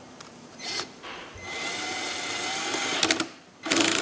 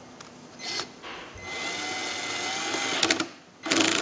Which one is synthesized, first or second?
first